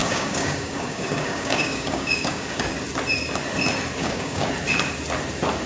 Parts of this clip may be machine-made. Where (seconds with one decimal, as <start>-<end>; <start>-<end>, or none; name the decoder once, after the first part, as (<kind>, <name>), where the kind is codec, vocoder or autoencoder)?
0.0-2.7 (codec, DAC); 4.0-4.5